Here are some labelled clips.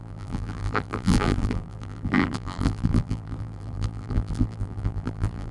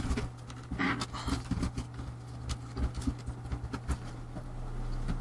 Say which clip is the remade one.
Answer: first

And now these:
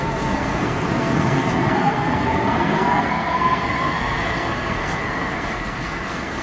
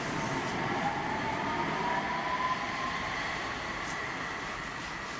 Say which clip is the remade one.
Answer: first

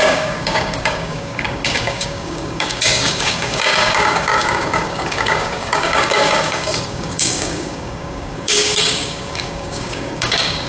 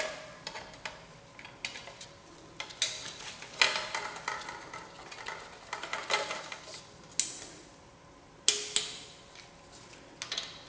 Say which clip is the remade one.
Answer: first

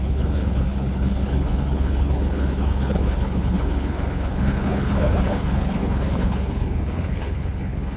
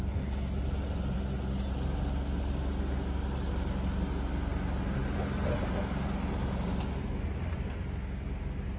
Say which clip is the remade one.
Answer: first